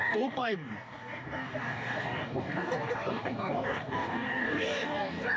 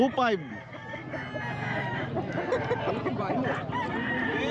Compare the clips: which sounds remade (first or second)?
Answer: first